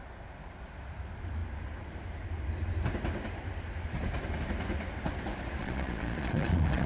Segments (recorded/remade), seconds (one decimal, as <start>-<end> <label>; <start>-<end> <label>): 0.0-5.6 recorded; 5.6-6.9 remade